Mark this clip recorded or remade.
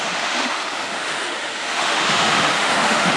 remade